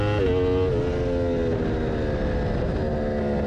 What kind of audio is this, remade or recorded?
recorded